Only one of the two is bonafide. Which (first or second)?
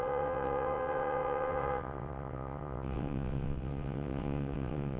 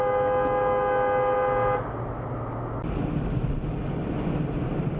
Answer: second